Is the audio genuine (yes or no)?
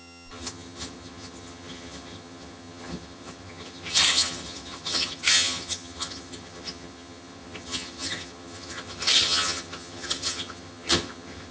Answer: no